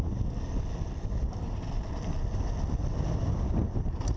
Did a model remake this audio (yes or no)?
no